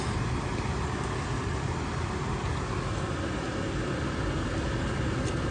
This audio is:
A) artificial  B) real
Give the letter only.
B